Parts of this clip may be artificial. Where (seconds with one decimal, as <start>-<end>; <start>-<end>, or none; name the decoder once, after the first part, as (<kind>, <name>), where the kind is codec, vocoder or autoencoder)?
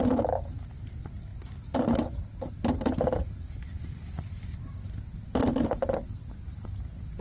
none